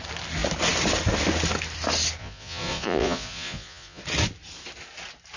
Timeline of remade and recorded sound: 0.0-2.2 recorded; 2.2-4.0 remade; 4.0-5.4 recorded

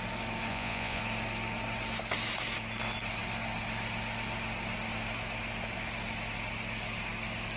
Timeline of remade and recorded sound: 0.0-0.5 recorded; 0.5-1.0 remade; 1.0-7.6 recorded